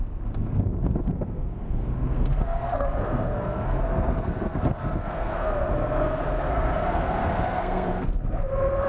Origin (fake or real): fake